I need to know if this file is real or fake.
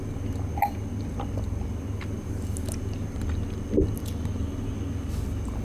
real